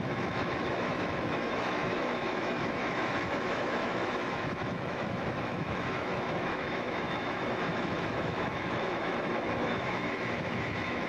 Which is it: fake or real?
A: fake